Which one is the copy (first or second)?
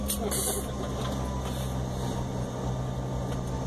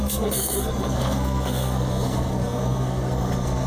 second